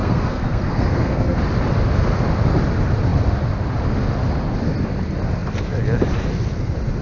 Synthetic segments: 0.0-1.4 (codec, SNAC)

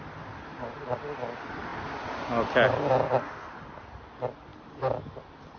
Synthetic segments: none

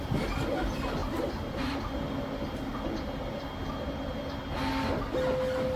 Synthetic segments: 1.0-1.6 (vocoder, BigVGAN v2)

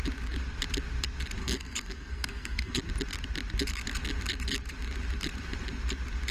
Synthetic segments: 1.4-2.8 (codec, SNAC)